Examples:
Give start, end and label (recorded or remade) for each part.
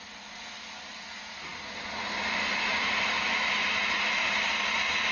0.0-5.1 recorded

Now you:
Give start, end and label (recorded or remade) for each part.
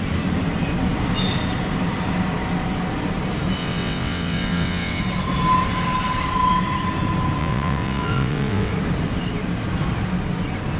0.0-3.6 recorded; 3.6-5.0 remade; 5.0-7.4 recorded; 7.4-8.7 remade; 8.7-10.8 recorded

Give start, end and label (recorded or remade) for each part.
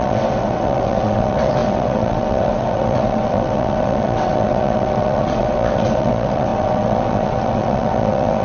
0.0-8.4 remade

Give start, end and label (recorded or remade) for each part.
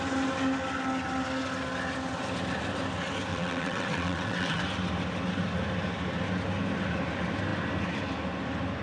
0.0-3.3 recorded; 3.3-4.6 remade; 4.6-8.8 recorded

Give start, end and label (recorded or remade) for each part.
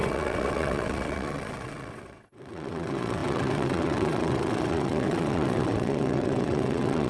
0.0-7.1 remade